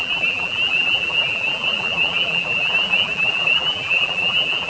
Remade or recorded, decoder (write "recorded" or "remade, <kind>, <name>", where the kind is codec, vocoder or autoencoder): remade, vocoder, BigVGAN v2